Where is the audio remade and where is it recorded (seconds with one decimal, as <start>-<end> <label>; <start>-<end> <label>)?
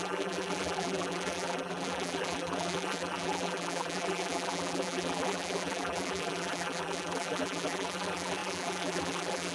0.0-9.5 remade